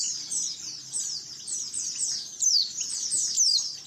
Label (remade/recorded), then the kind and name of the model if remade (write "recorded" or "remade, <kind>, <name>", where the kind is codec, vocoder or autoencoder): recorded